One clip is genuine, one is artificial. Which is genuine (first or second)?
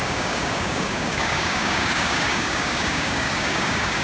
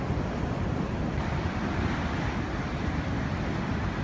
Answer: second